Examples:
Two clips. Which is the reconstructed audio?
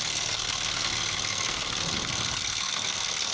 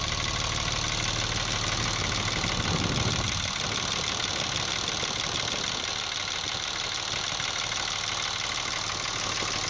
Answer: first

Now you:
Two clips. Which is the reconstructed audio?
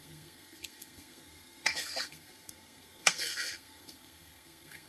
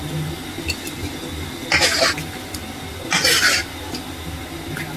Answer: first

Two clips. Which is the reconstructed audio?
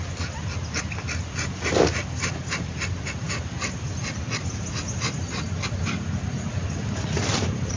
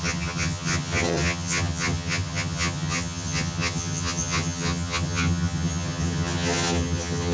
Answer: second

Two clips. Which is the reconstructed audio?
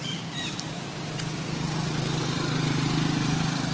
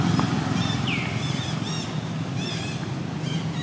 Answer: first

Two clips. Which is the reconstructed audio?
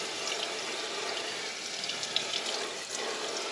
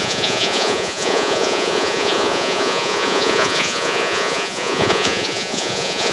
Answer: second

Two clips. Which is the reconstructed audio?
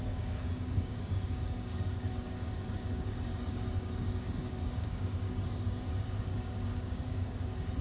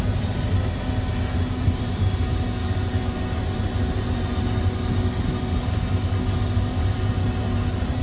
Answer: first